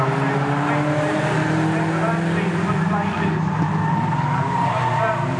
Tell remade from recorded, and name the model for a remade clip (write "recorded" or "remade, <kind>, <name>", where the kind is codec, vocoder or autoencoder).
recorded